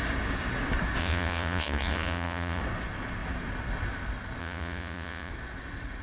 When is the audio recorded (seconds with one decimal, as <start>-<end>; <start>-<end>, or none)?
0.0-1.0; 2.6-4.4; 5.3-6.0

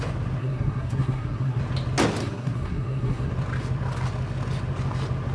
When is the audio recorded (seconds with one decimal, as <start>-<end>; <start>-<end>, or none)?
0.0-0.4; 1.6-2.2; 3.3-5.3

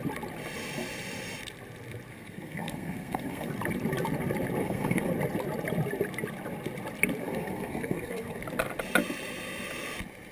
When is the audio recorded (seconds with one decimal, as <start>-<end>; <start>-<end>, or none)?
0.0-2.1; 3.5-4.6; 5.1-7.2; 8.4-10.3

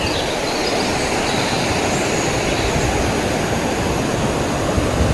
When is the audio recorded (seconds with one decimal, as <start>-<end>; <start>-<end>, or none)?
0.0-5.1

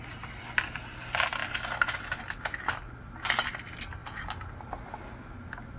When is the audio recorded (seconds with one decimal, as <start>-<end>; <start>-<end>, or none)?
0.0-5.8

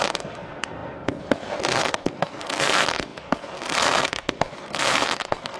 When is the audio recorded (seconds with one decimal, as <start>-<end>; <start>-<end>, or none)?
none